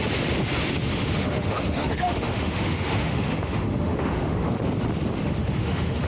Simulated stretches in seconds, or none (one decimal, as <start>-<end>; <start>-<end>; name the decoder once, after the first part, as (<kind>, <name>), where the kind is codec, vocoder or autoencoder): 0.9-4.5 (autoencoder, DAC-VAE); 5.2-6.1